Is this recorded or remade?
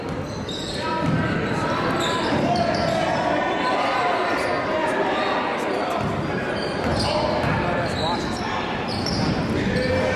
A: recorded